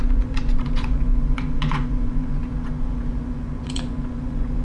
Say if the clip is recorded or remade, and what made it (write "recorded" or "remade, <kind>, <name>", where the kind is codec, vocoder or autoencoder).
remade, vocoder, Vocos